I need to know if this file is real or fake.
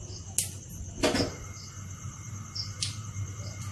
real